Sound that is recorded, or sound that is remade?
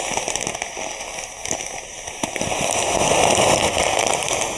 recorded